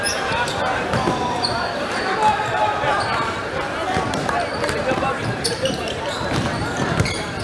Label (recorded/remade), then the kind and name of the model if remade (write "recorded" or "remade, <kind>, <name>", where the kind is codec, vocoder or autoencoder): remade, vocoder, BigVGAN v2